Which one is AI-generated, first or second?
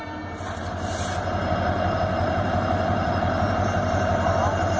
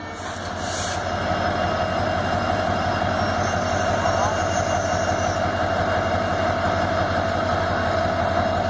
first